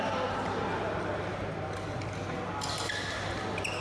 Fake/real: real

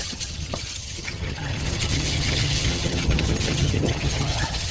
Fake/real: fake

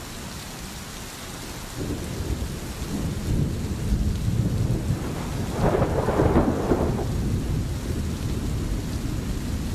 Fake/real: real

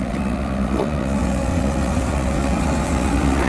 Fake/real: fake